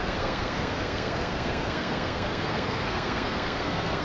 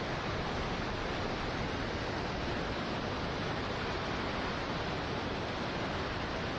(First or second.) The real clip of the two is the second